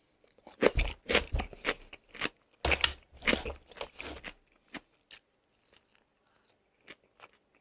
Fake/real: real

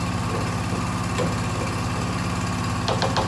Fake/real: real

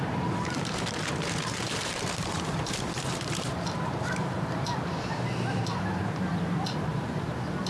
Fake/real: fake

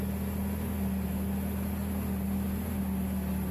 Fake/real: real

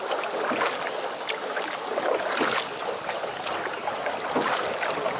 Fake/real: real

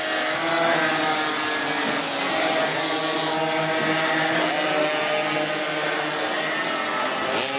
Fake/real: real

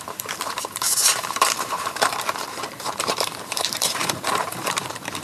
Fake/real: fake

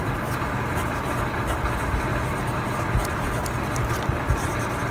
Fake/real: fake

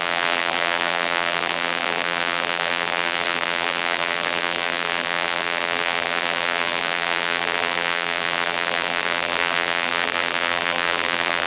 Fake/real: fake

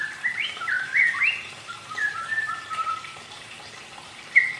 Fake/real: fake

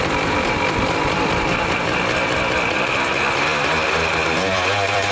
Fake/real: fake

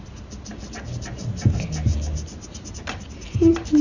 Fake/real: real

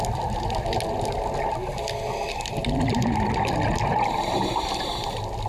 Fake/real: real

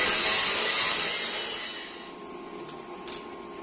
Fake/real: real